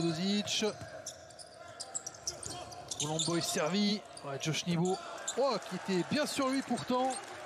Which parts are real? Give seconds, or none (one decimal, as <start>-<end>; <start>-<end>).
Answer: 0.0-7.5